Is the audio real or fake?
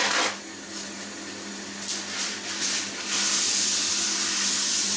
real